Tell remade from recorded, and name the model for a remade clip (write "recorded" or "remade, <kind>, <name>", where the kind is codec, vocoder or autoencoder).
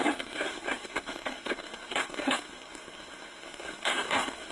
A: remade, codec, SNAC